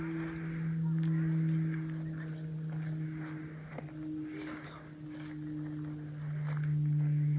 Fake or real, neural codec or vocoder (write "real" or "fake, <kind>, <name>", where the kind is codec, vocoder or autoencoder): real